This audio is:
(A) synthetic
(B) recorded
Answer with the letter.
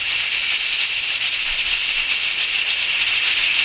B